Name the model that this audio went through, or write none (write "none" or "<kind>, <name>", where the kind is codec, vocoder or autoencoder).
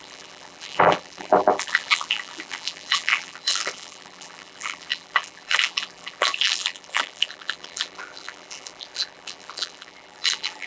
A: vocoder, BigVGAN v2